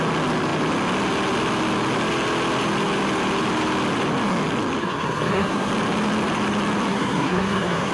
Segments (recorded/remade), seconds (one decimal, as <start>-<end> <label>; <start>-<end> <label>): 0.0-4.8 recorded; 4.8-5.7 remade; 5.7-6.9 recorded; 6.9-7.9 remade